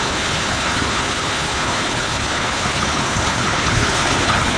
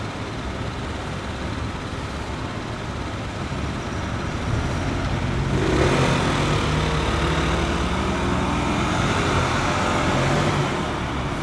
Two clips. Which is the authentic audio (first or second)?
second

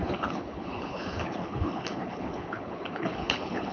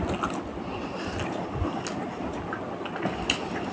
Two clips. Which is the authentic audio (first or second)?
second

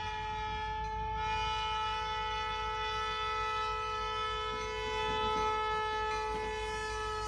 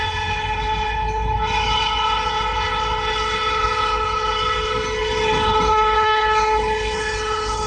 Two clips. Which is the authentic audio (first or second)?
first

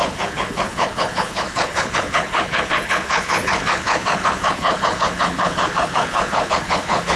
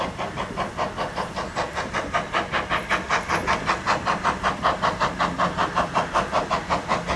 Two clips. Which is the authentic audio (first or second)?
second